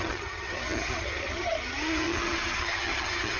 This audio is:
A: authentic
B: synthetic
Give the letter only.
B